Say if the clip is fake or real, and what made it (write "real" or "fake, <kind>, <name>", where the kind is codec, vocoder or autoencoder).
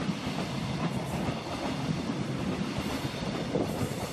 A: real